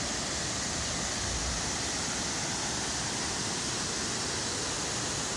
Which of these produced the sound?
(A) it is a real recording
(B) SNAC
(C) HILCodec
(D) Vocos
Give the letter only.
A